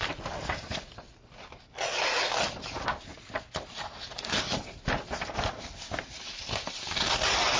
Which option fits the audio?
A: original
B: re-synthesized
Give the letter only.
A